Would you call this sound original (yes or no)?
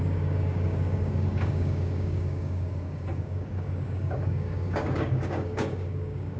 no